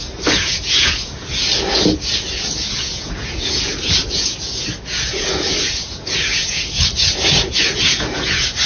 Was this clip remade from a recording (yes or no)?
yes